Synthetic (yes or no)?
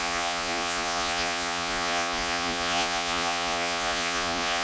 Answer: yes